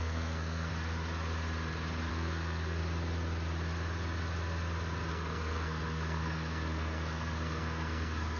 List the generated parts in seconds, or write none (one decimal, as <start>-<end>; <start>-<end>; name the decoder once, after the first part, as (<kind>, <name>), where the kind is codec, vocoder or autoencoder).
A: 0.0-0.7 (codec, SNAC); 2.1-2.8; 5.1-8.4